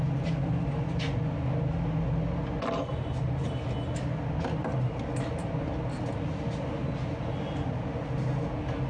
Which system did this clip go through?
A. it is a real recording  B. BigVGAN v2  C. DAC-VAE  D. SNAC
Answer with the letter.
A